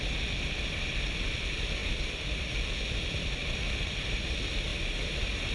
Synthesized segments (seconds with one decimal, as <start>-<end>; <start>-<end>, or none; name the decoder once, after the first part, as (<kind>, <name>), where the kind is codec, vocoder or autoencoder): 0.0-4.7 (vocoder, BigVGAN v2)